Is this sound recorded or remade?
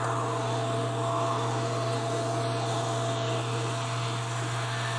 recorded